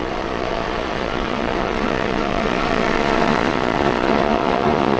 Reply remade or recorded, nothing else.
remade